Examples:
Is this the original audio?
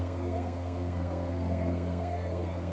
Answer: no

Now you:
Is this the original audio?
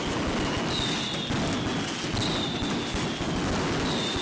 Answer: yes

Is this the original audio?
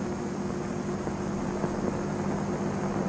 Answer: yes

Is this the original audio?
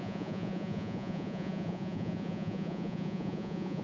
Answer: no